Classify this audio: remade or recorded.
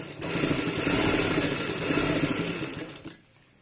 recorded